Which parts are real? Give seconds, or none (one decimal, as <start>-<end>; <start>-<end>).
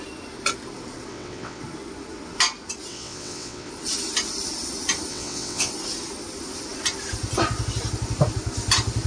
0.0-1.1; 1.6-2.9; 3.7-5.1; 5.7-9.1